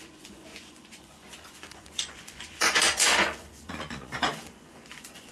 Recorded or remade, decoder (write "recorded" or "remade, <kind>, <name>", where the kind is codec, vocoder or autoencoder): remade, vocoder, Vocos